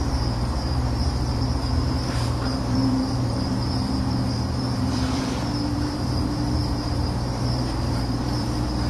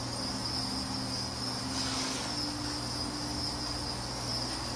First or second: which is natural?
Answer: second